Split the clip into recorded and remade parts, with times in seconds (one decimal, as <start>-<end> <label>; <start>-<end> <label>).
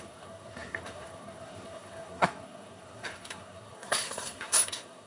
0.0-5.1 remade